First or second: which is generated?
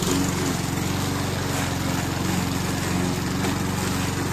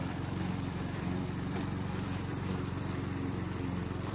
second